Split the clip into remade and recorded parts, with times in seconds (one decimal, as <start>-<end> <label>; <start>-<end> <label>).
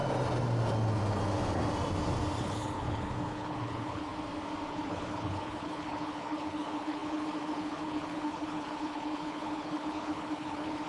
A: 0.0-2.4 recorded; 2.4-4.1 remade; 4.1-4.7 recorded; 4.7-10.9 remade